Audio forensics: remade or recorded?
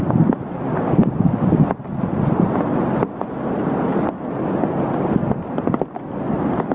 recorded